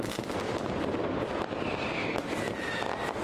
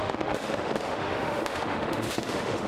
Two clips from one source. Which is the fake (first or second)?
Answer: second